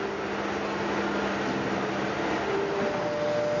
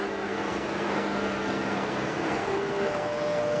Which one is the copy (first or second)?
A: second